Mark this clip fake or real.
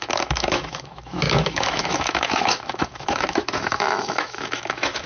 fake